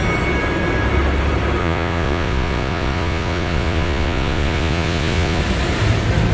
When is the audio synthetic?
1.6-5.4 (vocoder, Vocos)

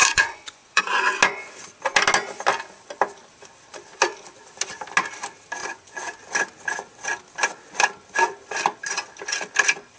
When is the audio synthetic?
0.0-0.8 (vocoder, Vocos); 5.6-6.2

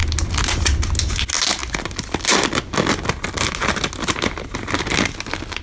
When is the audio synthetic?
none

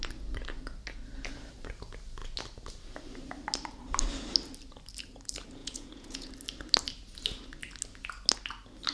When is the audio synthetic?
5.6-6.3 (vocoder, Vocos)